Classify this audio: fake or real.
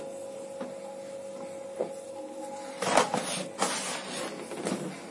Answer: real